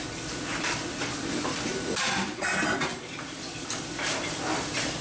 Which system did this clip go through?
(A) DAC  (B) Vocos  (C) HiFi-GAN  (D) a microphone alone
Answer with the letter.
D